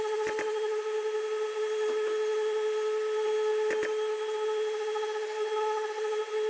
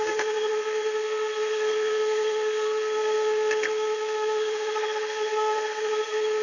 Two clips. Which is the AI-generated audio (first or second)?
second